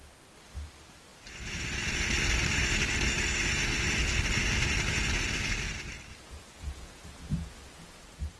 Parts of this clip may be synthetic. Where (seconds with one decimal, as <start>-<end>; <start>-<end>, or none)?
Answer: 6.1-8.4